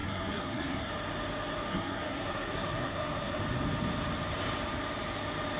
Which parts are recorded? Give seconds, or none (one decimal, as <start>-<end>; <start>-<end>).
0.9-1.7; 3.4-5.6